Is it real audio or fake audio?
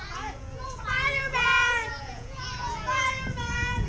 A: fake